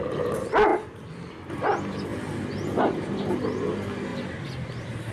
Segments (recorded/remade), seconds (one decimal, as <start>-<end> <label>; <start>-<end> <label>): 0.0-0.7 recorded; 0.7-1.5 remade; 1.5-4.1 recorded; 4.1-5.1 remade